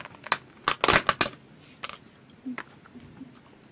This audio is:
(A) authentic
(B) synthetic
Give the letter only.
A